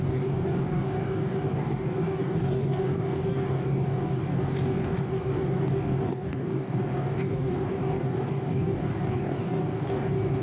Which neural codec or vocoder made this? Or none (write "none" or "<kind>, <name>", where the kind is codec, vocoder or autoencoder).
codec, DAC